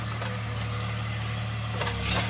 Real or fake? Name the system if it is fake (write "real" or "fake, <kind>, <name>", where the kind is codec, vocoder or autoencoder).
real